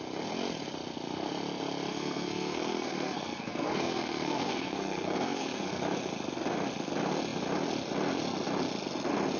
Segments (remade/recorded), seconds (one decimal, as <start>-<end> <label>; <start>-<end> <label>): 0.0-1.9 recorded; 1.9-5.8 remade; 5.8-9.4 recorded